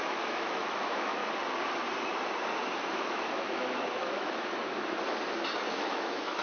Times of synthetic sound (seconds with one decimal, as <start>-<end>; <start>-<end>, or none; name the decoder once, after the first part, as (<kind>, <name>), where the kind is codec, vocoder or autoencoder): 0.0-1.2 (autoencoder, DAC-VAE); 2.9-4.6; 5.7-6.4

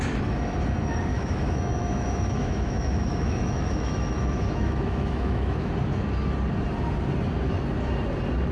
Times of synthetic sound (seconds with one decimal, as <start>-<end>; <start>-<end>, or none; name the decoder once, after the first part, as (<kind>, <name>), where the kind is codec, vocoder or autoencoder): 1.1-5.7 (autoencoder, DAC-VAE)

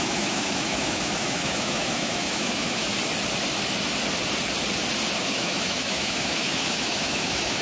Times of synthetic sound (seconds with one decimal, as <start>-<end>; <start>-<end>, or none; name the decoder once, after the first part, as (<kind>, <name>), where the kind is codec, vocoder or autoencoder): 0.0-2.9 (autoencoder, DAC-VAE); 5.2-7.6